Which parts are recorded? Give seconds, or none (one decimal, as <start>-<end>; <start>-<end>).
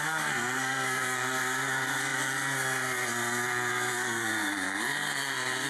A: none